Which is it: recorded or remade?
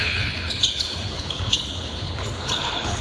remade